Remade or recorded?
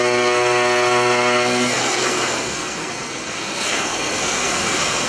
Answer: remade